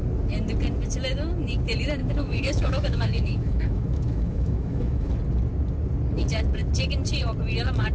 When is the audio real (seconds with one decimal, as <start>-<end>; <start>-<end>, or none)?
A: 0.0-2.0; 5.1-7.9